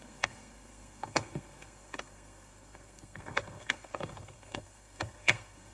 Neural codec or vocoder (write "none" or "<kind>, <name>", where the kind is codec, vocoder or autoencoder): codec, SNAC